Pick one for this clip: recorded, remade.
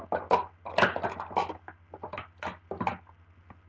recorded